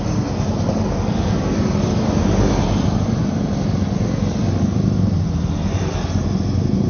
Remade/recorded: recorded